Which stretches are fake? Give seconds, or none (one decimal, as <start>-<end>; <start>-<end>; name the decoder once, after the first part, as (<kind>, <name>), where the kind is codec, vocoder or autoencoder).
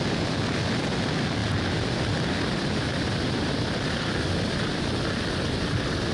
1.4-4.8 (vocoder, BigVGAN v2)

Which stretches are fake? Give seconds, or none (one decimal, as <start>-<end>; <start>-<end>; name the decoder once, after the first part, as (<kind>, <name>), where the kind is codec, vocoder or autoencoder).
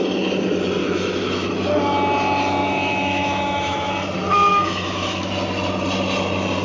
0.8-1.5 (autoencoder, DAC-VAE); 2.6-3.9; 4.5-5.3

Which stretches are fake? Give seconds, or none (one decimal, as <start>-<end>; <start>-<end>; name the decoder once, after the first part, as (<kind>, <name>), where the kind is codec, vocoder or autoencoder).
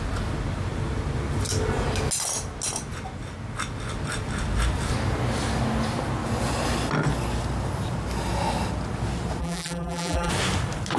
9.4-10.3 (vocoder, BigVGAN v2)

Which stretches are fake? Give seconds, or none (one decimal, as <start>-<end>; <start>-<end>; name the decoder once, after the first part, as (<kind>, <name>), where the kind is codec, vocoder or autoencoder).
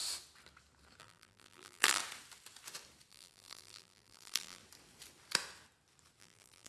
1.0-2.0 (vocoder, BigVGAN v2); 3.1-4.6; 6.2-6.7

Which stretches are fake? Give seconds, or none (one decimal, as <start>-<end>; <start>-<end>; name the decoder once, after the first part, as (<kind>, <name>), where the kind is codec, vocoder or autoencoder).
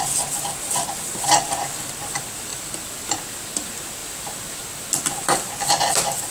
none